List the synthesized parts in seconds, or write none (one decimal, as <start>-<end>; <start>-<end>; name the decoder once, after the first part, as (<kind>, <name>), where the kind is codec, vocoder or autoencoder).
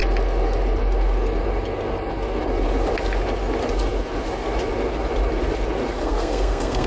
6.0-6.9 (codec, SNAC)